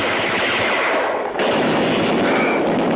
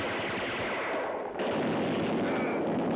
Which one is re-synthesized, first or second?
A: first